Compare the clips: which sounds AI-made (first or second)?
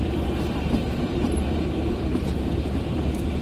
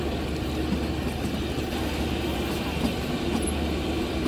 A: first